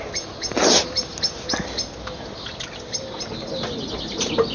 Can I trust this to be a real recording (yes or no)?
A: yes